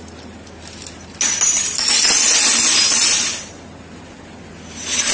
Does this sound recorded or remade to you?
recorded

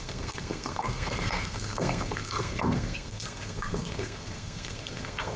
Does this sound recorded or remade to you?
remade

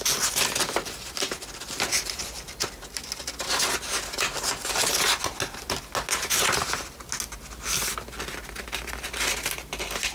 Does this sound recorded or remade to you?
recorded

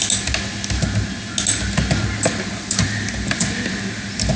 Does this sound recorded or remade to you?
recorded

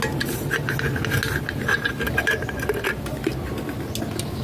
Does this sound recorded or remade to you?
recorded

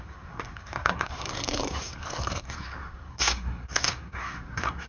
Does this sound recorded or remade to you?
remade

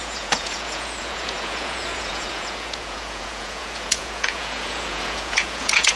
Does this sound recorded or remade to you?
remade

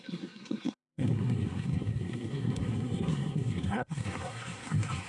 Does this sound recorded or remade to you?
remade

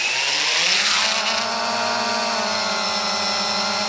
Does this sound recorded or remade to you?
recorded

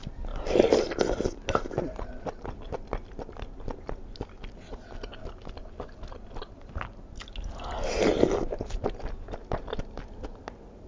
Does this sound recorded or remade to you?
recorded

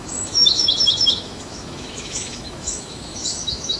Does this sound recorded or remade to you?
remade